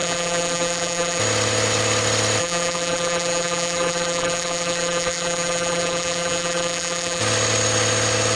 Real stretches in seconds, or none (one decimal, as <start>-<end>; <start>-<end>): 1.2-2.4; 7.2-8.4